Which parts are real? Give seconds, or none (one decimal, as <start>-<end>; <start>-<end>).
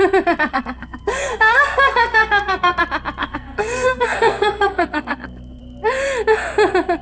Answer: 0.0-0.5; 2.8-3.2; 5.6-7.0